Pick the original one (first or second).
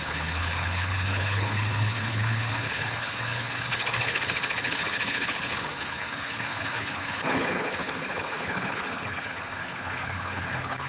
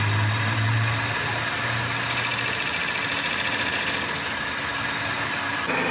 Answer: second